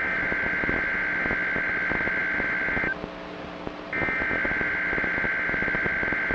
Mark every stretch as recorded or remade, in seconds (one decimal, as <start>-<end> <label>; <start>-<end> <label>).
0.0-6.3 recorded